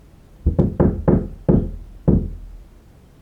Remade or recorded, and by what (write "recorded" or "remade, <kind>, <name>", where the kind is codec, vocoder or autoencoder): recorded